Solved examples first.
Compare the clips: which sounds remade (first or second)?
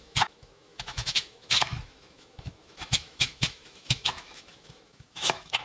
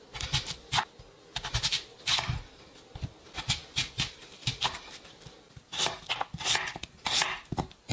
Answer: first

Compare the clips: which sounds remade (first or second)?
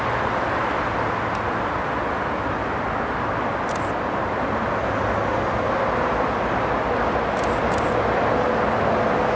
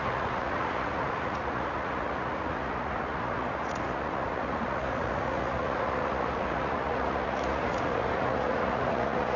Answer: second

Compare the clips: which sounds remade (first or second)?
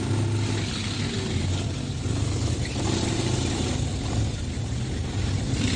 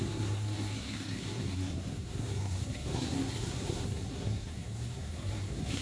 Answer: second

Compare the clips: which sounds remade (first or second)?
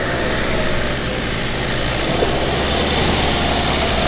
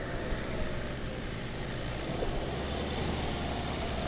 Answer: second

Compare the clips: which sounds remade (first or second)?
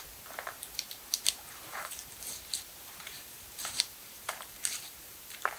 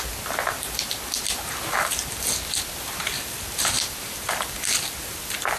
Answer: first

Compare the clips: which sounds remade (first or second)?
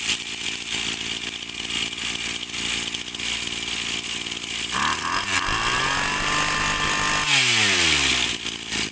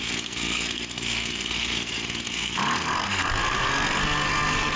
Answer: second